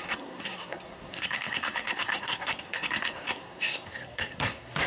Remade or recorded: remade